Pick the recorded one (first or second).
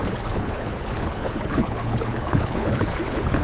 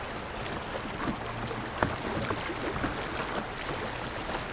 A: second